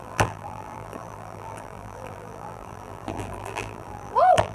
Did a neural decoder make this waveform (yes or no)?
yes